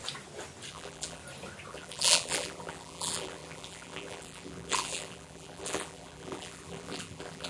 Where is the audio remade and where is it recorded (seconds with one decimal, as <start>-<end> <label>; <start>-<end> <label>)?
0.0-0.7 recorded; 0.7-1.2 remade; 1.2-1.7 recorded; 1.7-7.5 remade